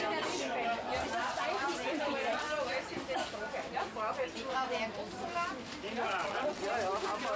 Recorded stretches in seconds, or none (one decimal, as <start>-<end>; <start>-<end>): 0.0-6.2; 6.7-7.4